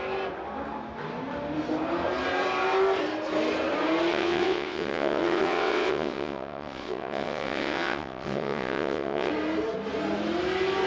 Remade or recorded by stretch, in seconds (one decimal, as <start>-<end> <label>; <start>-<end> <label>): 0.0-4.1 recorded; 4.1-9.3 remade; 9.3-10.9 recorded